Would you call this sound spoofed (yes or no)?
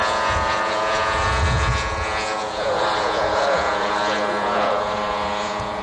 yes